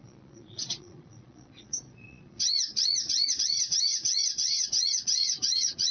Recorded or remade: remade